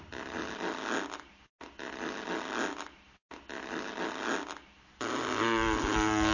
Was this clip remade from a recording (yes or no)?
no